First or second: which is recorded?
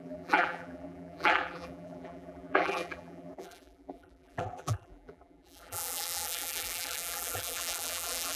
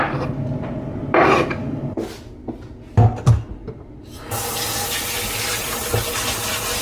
second